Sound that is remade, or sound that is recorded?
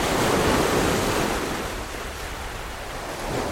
recorded